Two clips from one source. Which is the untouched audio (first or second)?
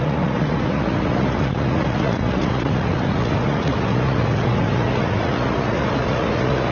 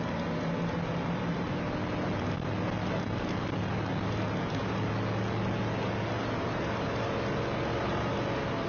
second